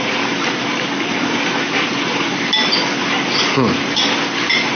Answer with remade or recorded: recorded